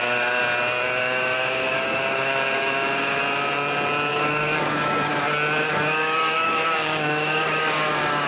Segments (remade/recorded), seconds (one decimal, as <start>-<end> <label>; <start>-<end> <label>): 0.0-0.4 remade; 0.4-1.0 recorded; 1.0-3.2 remade; 3.2-4.1 recorded; 4.1-5.1 remade; 5.1-5.6 recorded; 5.6-8.3 remade